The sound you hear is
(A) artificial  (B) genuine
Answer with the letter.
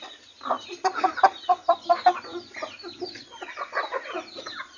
B